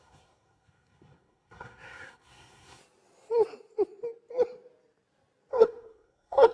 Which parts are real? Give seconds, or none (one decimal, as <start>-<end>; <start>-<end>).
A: 2.8-5.5